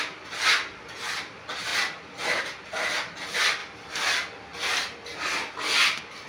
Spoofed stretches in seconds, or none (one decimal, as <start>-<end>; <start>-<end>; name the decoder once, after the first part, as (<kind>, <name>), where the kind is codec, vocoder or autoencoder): none

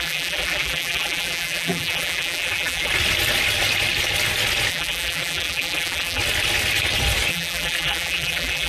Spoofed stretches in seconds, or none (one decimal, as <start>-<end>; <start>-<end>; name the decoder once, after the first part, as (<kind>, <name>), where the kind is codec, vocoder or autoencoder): 0.0-2.9 (vocoder, BigVGAN v2); 4.7-6.2; 7.3-8.7

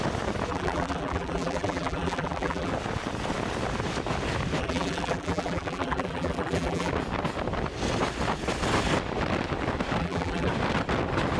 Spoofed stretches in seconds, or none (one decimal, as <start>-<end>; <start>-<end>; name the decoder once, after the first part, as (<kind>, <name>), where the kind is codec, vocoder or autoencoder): 0.5-2.7 (vocoder, BigVGAN v2); 4.6-6.9; 10.0-10.5

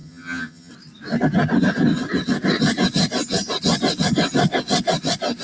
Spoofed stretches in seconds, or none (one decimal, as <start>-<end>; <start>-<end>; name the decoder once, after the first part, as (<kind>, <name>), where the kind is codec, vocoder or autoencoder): 0.0-0.7 (vocoder, HiFi-GAN)